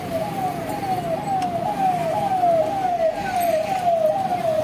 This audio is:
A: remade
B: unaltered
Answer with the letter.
B